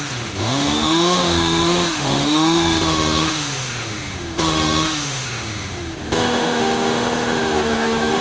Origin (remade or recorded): remade